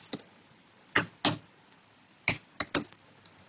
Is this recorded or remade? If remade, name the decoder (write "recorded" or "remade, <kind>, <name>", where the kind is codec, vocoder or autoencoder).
recorded